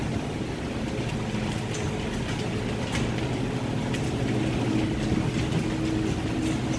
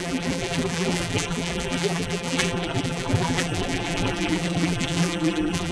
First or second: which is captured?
first